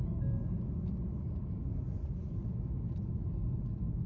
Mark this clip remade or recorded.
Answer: recorded